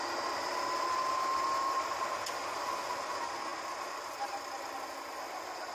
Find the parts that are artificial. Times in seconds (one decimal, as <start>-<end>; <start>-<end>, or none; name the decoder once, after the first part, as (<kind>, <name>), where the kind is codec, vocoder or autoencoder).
none